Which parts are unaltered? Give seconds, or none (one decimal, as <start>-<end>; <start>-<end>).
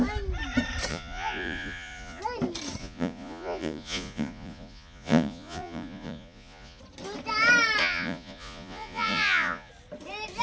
0.0-0.9; 2.2-2.8; 6.8-7.8; 9.7-10.4